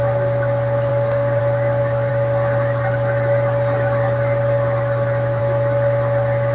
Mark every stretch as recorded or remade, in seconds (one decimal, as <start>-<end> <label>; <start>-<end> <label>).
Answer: 0.0-0.9 recorded; 0.9-1.4 remade; 1.4-6.5 recorded